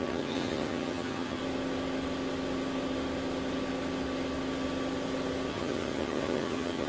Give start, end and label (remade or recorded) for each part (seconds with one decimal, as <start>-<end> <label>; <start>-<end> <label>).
0.0-1.4 remade; 1.4-5.5 recorded; 5.5-6.9 remade